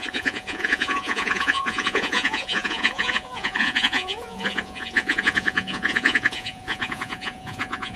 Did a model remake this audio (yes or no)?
yes